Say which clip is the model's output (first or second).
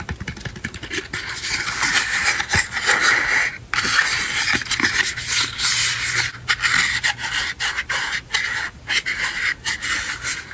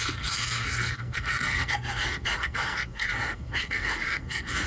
second